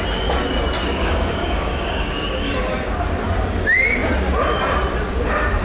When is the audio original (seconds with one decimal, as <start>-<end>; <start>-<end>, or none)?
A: 0.0-0.8; 2.5-5.6